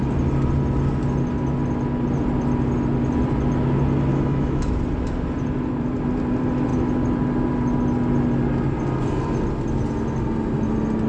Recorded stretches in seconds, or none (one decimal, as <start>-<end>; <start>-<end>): 0.0-4.1; 4.8-11.1